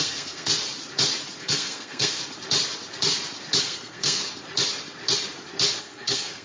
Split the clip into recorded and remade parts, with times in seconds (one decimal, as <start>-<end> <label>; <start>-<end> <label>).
0.0-0.5 remade; 0.5-1.4 recorded; 1.4-2.2 remade; 2.2-3.6 recorded; 3.6-4.2 remade; 4.2-5.8 recorded; 5.8-6.4 remade